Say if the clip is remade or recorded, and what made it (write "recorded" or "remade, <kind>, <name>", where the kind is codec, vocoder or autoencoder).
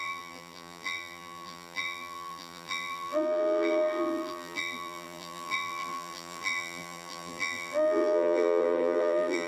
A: remade, vocoder, BigVGAN v2